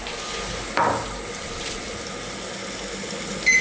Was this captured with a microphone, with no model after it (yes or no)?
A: yes